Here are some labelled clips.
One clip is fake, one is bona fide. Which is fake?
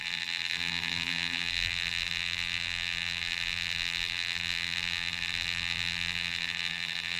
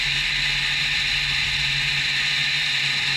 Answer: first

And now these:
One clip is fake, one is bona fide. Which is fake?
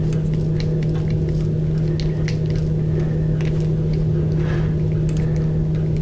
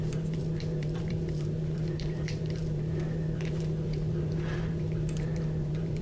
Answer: second